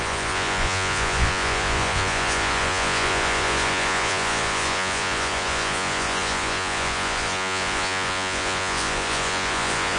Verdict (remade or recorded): remade